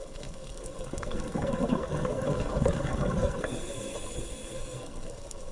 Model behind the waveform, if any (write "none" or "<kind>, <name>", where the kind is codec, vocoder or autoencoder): codec, SNAC